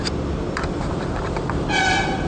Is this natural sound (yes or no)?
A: no